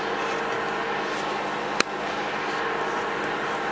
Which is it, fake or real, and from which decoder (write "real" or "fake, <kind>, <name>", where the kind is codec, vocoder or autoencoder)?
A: real